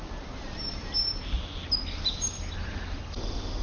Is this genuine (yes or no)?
yes